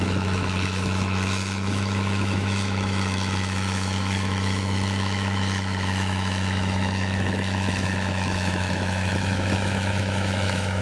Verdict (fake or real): fake